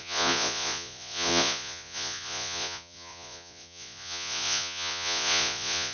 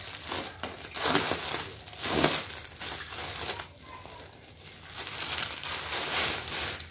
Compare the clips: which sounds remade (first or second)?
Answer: first